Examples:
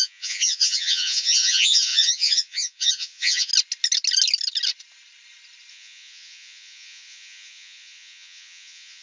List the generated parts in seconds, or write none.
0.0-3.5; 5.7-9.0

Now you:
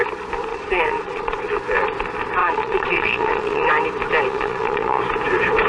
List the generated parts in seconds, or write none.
0.5-1.4; 2.4-3.7; 4.3-5.0

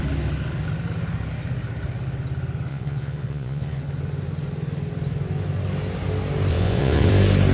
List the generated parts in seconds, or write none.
2.7-3.8; 6.5-7.1

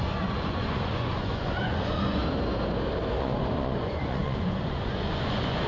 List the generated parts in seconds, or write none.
0.0-2.2; 3.2-5.7

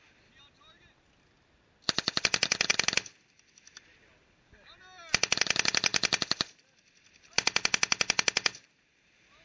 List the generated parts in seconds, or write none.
none

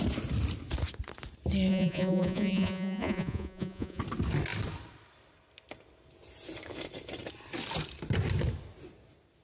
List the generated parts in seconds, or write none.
1.7-4.0

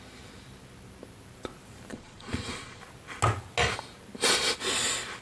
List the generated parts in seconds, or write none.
1.9-2.8

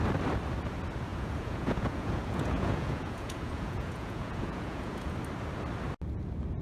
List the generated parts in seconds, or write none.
1.1-5.1